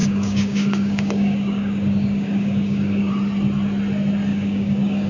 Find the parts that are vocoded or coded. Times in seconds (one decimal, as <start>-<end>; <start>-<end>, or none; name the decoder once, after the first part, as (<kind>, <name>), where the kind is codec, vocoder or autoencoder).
0.0-3.1 (codec, DAC); 4.3-5.1